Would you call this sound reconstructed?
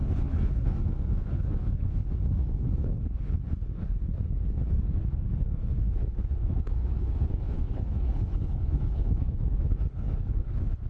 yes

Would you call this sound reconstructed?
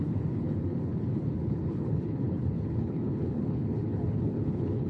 yes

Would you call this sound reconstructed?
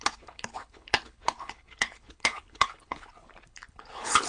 yes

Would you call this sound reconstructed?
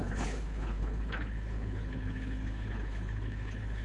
yes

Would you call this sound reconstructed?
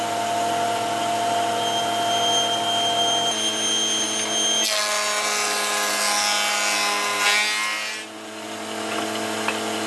no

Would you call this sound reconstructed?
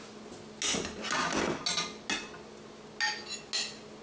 no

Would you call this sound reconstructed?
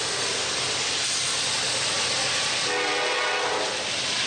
no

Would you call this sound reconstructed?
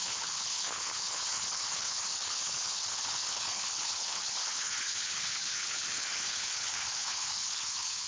yes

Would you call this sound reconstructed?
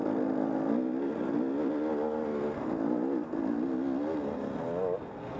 no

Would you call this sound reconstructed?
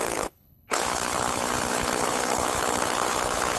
yes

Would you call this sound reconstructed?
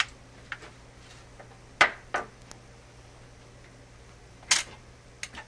no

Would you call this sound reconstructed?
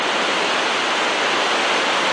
no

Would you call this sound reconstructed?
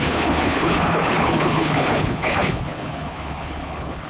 yes